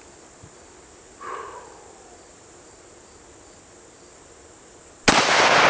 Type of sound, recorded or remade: recorded